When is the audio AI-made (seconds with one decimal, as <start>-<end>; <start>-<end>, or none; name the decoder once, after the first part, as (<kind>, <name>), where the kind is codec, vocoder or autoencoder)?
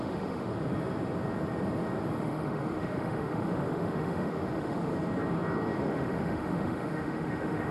0.0-0.5 (autoencoder, DAC-VAE); 2.2-4.9; 5.8-7.7